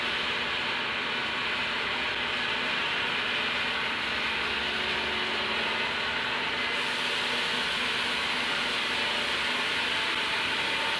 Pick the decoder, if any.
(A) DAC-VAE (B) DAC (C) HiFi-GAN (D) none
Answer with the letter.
D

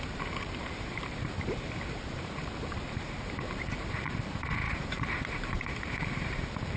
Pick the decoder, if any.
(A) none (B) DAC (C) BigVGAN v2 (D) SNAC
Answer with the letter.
C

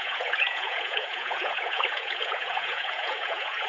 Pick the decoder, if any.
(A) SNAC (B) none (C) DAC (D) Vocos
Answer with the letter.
D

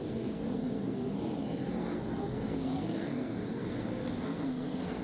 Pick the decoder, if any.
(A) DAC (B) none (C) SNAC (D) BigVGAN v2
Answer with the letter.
C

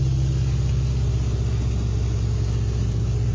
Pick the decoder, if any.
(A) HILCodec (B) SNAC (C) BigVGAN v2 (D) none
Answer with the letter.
D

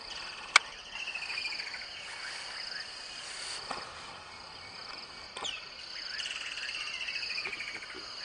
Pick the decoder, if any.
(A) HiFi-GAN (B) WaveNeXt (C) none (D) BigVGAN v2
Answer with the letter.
C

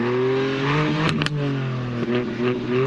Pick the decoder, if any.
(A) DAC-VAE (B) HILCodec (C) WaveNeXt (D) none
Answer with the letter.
D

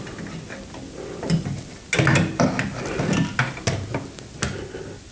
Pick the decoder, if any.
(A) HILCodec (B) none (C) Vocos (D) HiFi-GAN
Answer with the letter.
B